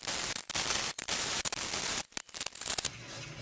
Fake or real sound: real